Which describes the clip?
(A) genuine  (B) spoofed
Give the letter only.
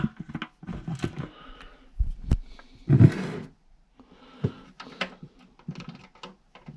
A